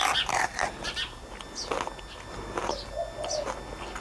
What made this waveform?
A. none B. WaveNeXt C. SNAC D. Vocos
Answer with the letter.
A